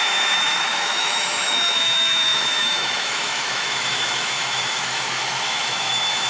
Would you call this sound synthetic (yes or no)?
yes